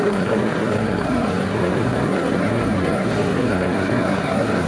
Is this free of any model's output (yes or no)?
no